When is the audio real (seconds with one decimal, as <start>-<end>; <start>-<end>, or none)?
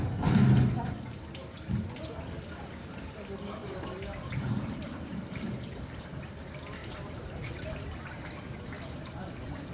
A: 0.0-3.6; 6.2-6.8; 7.5-9.7